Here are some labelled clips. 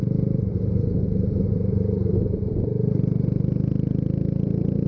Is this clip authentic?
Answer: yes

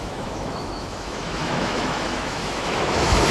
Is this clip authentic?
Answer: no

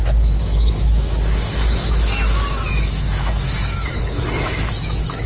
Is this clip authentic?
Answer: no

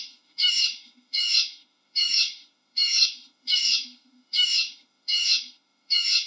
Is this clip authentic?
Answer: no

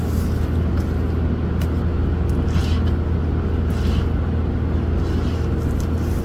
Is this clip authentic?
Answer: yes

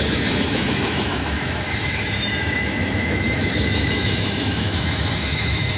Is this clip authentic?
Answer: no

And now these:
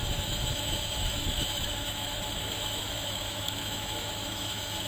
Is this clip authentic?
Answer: no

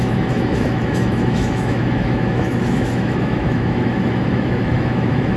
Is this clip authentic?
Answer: no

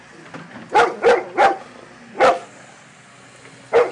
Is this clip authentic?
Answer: yes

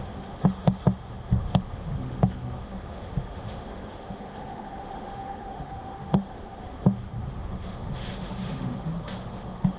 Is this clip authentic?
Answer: no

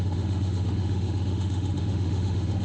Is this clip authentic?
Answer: no